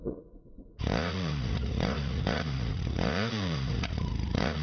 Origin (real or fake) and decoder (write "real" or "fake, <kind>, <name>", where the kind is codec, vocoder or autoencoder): fake, vocoder, Vocos